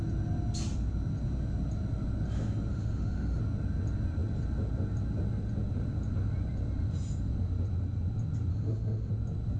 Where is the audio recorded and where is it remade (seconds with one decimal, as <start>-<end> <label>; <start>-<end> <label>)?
0.0-2.7 recorded; 2.7-3.4 remade; 3.4-8.5 recorded; 8.5-9.1 remade; 9.1-9.6 recorded